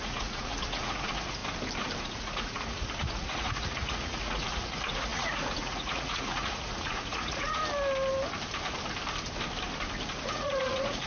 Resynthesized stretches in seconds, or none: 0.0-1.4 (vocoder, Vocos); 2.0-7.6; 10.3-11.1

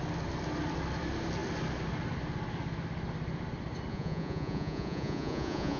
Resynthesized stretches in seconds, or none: 3.9-5.8 (vocoder, Vocos)

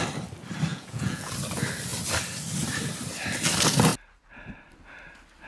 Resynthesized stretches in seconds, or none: 0.7-1.3 (vocoder, Vocos)